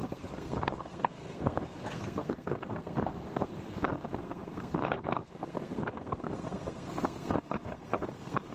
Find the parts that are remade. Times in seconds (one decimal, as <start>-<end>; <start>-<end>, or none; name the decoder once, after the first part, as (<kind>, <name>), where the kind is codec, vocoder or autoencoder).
0.0-8.5 (codec, SNAC)